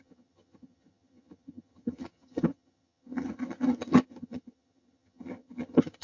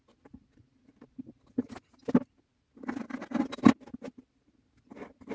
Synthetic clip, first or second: first